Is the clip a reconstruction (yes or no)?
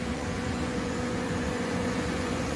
yes